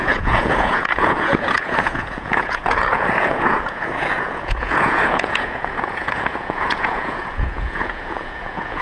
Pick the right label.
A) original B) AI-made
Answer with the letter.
B